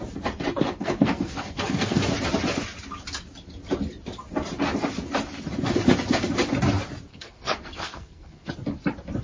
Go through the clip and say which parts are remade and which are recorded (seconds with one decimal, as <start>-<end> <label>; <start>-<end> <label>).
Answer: 0.0-0.5 recorded; 0.5-2.0 remade; 2.0-7.1 recorded; 7.1-8.5 remade; 8.5-9.2 recorded